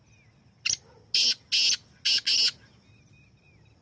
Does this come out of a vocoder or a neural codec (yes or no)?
no